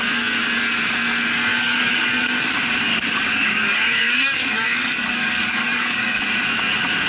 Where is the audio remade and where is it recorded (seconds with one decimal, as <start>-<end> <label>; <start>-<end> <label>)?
0.0-1.5 recorded; 1.5-2.5 remade; 2.5-2.9 recorded; 2.9-6.2 remade; 6.2-7.1 recorded